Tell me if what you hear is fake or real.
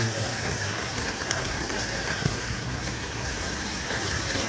fake